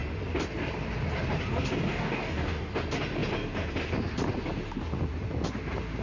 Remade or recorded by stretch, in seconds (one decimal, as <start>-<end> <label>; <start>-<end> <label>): 0.0-1.9 recorded; 1.9-2.7 remade; 2.7-6.0 recorded